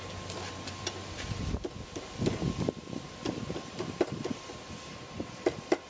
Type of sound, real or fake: real